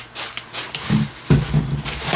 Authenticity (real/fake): real